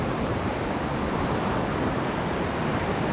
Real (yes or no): yes